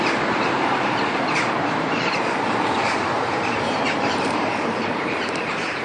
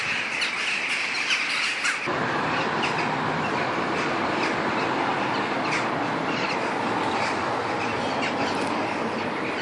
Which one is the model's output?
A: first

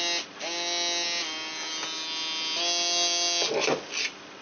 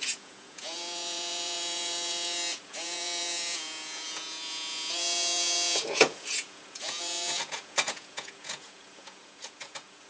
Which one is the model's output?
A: second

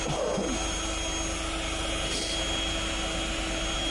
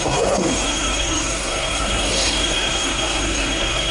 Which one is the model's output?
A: second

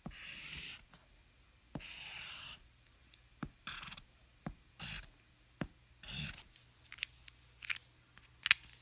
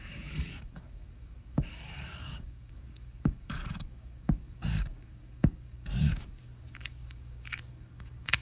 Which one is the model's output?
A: second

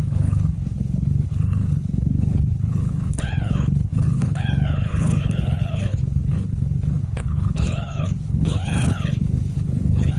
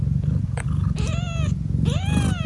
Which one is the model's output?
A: first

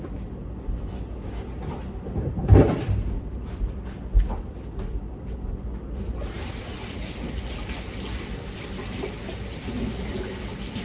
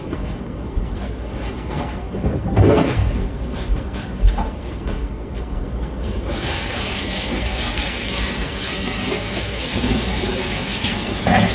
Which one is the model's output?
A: second